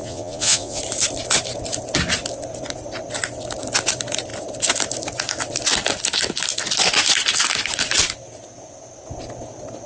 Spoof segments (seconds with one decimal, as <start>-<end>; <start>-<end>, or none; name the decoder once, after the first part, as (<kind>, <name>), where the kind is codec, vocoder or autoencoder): 0.0-0.8 (vocoder, Vocos)